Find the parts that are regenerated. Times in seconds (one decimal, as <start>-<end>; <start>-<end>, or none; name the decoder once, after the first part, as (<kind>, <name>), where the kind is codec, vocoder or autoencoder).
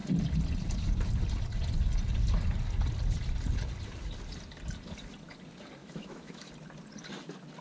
5.8-6.5 (autoencoder, DAC-VAE)